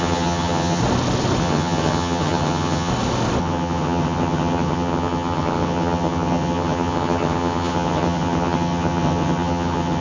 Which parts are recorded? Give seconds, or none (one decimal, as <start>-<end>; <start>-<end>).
0.8-1.4; 2.9-3.4